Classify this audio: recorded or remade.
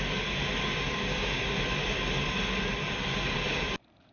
recorded